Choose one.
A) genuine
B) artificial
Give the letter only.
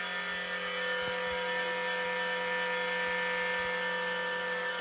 A